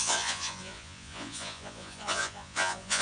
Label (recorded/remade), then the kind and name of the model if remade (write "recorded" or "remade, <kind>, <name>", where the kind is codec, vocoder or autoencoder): remade, vocoder, Vocos